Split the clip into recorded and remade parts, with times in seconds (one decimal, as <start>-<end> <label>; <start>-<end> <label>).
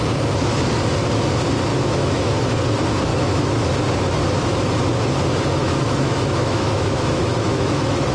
0.0-1.7 recorded; 1.7-2.3 remade; 2.3-3.1 recorded; 3.1-3.7 remade; 3.7-5.6 recorded; 5.6-8.1 remade